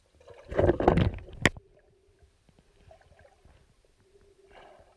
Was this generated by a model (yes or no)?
no